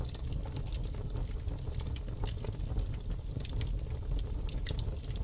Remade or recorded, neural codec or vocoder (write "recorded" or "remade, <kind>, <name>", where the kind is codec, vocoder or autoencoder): recorded